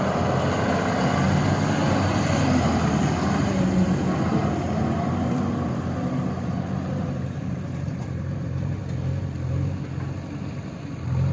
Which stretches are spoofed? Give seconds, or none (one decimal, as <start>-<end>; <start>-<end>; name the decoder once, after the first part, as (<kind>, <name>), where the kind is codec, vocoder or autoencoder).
4.4-8.8 (vocoder, BigVGAN v2)